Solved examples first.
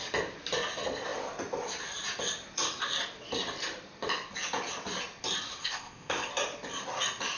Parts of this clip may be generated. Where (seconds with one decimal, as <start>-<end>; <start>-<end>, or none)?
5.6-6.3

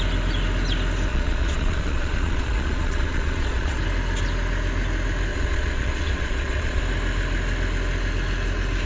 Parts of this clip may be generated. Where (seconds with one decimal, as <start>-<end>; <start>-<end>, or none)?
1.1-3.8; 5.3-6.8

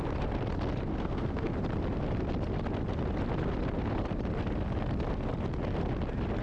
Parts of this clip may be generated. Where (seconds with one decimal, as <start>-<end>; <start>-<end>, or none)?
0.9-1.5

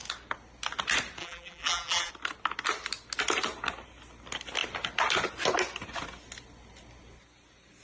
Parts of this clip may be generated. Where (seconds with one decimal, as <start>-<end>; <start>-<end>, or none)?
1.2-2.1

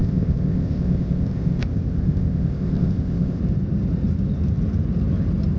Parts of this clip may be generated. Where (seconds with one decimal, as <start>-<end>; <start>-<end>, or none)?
0.0-3.4